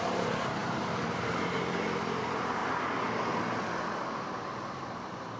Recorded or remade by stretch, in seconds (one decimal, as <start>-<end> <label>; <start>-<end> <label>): 0.0-2.6 remade; 2.6-4.2 recorded; 4.2-5.4 remade